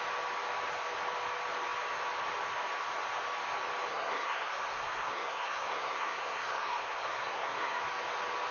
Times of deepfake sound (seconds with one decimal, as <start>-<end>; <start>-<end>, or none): 3.9-7.8